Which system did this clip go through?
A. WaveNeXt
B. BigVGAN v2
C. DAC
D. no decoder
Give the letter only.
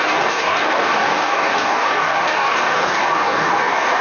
C